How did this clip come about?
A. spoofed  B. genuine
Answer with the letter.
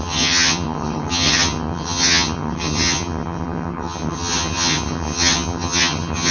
A